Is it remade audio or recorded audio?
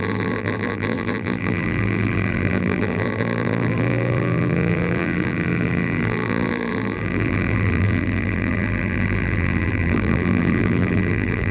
remade